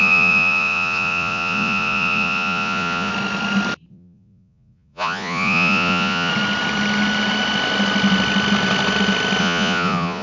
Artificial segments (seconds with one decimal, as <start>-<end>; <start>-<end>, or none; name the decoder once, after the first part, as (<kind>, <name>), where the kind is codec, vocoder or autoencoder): 0.0-3.1 (vocoder, Vocos); 3.9-6.3; 9.4-10.2